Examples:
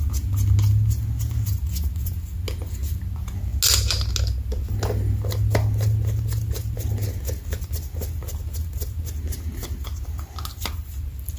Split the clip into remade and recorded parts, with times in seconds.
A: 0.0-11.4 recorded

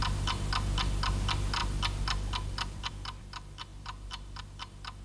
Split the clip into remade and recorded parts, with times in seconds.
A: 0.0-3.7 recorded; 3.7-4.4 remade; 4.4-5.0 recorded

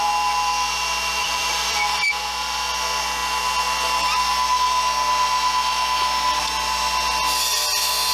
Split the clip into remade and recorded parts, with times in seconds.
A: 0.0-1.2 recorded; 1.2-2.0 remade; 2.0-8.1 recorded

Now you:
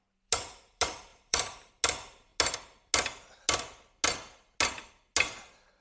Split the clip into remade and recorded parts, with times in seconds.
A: 0.0-1.1 recorded; 1.1-1.7 remade; 1.7-5.8 recorded